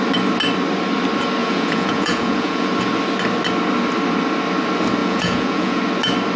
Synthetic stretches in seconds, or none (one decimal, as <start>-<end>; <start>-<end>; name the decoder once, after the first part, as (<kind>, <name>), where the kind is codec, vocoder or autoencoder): 1.4-2.7 (vocoder, Vocos); 5.0-5.8